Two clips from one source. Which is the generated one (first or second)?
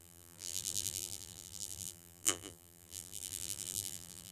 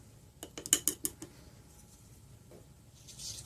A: first